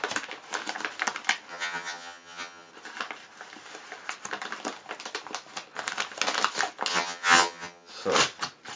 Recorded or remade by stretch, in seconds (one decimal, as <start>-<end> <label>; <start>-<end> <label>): 0.0-1.5 recorded; 1.5-2.7 remade; 2.7-6.9 recorded; 6.9-7.9 remade; 7.9-8.8 recorded